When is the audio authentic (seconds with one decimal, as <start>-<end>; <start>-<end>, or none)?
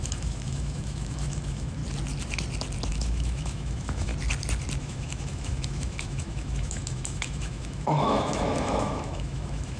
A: 1.8-2.9; 4.1-4.8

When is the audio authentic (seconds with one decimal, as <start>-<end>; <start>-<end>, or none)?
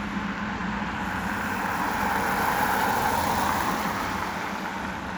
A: 0.0-5.2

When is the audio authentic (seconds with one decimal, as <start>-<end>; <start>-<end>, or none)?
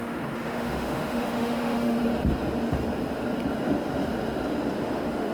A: 2.0-4.8